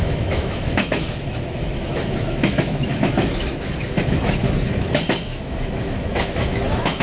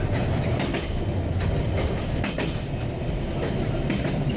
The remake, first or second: first